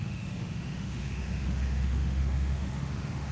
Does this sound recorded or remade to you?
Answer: remade